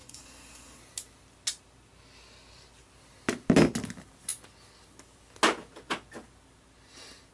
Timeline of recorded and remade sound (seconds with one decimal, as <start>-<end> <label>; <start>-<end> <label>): 0.0-0.8 remade; 0.8-7.3 recorded